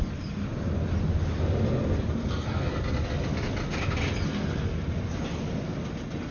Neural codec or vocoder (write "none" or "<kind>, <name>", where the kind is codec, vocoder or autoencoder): none